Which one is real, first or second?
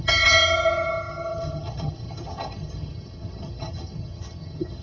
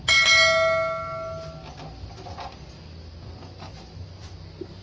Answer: second